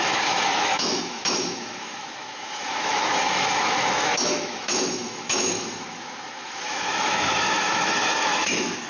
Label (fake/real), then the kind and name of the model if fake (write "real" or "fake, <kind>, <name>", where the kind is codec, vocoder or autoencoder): fake, autoencoder, DAC-VAE